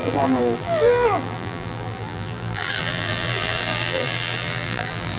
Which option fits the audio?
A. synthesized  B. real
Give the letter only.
A